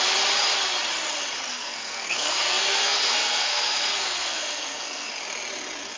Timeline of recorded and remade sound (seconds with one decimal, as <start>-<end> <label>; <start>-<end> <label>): 0.0-1.5 recorded; 1.5-5.1 remade; 5.1-6.0 recorded